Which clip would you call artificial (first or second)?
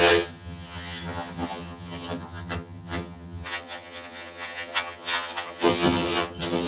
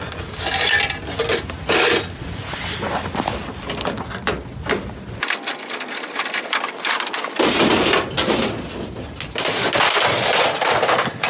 first